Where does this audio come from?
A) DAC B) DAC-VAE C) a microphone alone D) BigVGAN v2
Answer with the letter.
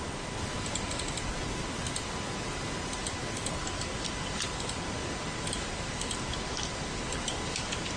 C